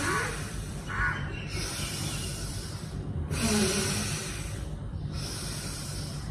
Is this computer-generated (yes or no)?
yes